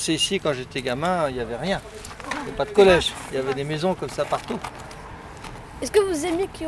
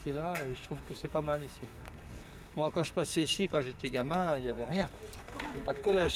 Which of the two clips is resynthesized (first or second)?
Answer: second